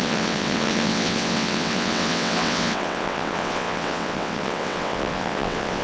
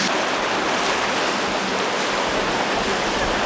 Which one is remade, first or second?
first